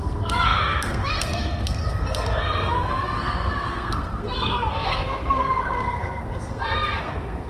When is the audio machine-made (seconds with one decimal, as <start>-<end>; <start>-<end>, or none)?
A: 0.0-7.5

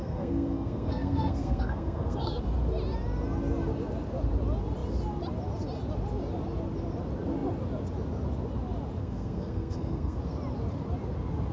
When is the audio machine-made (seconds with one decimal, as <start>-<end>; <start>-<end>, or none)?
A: 0.0-2.4; 9.0-10.2